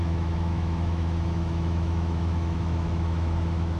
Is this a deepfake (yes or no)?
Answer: yes